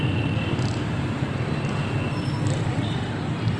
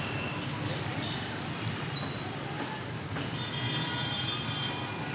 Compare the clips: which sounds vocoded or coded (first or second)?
second